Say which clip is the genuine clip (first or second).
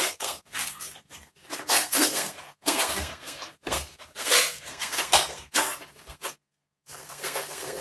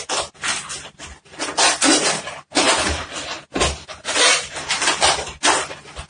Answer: second